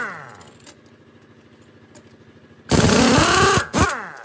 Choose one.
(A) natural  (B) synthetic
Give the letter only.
A